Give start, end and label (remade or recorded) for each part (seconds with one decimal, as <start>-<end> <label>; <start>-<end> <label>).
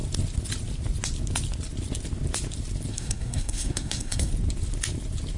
0.0-2.9 recorded; 2.9-4.3 remade; 4.3-5.4 recorded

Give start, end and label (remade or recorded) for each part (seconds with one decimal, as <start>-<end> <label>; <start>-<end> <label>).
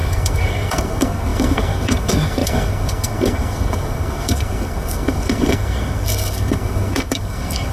0.0-7.7 remade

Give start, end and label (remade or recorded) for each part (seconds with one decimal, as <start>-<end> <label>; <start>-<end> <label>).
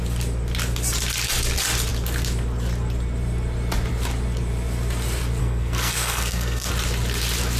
0.0-5.4 recorded; 5.4-6.7 remade; 6.7-7.6 recorded